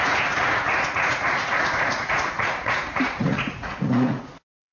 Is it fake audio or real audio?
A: fake